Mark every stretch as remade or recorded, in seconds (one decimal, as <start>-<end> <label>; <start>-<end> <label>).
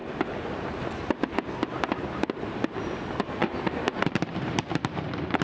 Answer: 0.0-3.4 recorded; 3.4-5.4 remade